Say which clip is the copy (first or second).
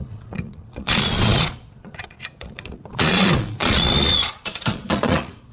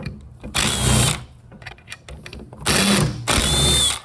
first